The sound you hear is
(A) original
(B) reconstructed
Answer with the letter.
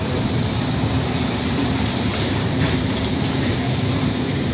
B